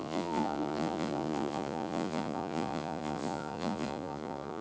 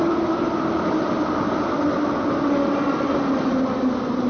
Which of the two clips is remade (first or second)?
first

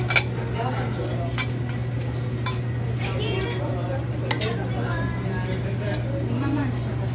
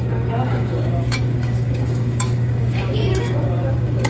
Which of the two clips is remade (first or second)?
second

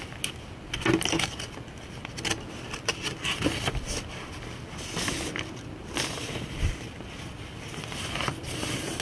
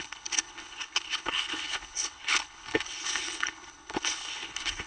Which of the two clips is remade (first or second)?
second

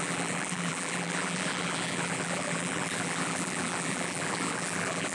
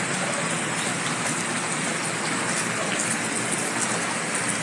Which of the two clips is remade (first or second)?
first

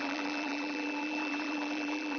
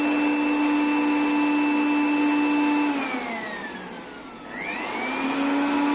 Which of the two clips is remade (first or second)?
first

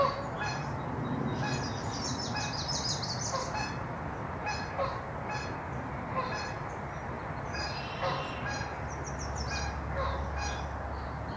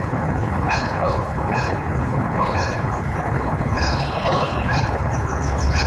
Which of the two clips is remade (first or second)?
second